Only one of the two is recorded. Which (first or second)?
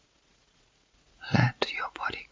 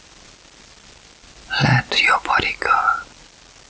second